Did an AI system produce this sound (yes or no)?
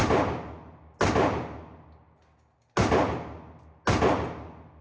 no